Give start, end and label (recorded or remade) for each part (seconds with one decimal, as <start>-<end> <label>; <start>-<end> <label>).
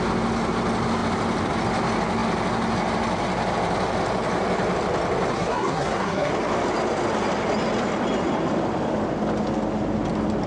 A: 0.0-5.3 recorded; 5.3-6.3 remade; 6.3-10.5 recorded